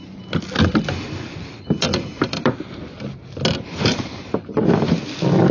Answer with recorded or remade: recorded